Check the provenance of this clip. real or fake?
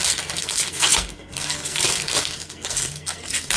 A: fake